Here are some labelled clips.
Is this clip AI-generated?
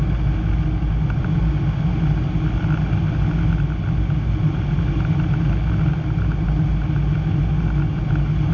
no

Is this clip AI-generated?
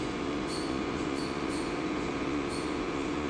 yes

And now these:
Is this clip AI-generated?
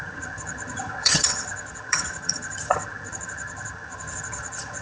yes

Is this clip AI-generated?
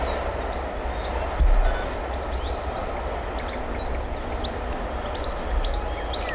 no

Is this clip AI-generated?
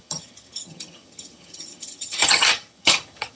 yes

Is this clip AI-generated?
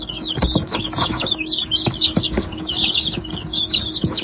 yes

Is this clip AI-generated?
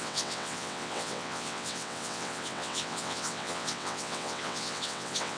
yes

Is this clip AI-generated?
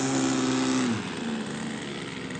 no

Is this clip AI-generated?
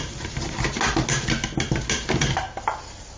no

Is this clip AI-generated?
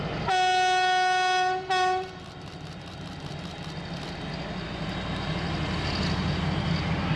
no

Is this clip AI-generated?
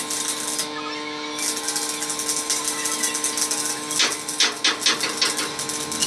no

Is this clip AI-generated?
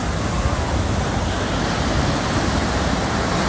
no